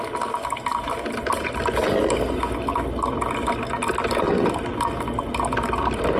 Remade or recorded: recorded